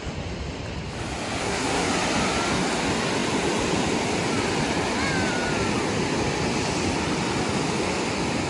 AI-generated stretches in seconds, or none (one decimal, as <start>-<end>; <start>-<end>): 1.4-1.9